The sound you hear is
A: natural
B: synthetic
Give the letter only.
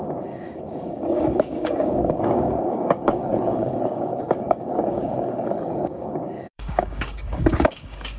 B